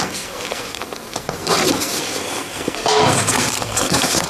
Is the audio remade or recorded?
remade